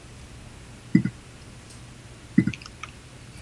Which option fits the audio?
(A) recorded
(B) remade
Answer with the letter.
A